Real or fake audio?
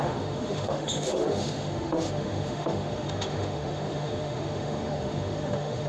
fake